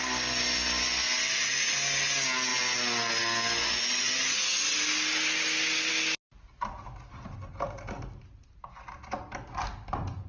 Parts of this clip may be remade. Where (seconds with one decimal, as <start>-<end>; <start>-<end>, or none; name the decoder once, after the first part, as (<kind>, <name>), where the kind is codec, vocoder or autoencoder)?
none